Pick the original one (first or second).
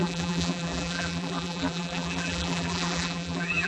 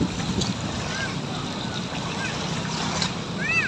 second